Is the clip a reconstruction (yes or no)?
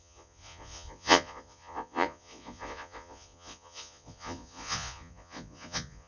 yes